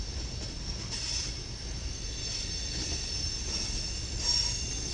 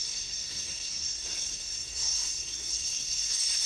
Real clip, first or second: first